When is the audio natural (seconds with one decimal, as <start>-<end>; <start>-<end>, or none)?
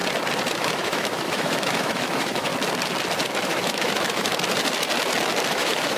0.0-0.5; 2.5-3.4; 4.3-5.5